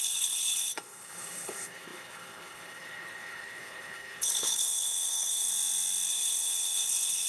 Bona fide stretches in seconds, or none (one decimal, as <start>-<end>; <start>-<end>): 5.5-6.1